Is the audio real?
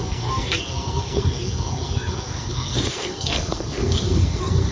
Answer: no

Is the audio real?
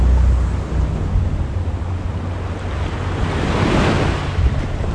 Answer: yes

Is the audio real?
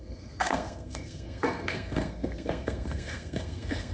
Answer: no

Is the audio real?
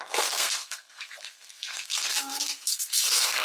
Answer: no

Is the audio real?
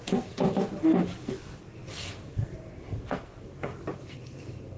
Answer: no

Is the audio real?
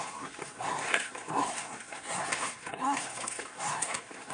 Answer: no